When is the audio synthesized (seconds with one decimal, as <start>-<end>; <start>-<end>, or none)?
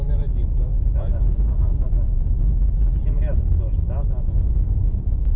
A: 0.0-2.3; 3.3-5.4